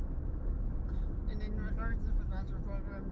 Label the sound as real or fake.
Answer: real